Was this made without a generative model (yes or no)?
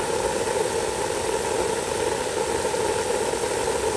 yes